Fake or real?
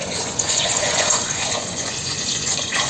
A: fake